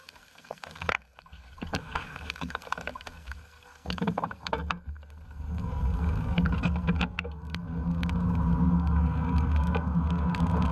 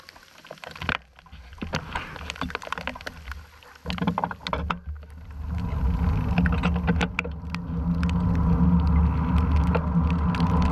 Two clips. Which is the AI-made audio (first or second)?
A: first